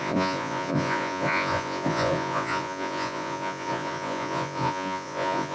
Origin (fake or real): fake